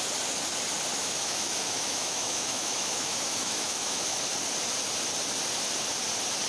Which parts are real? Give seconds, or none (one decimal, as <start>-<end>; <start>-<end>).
0.0-0.9; 4.2-6.5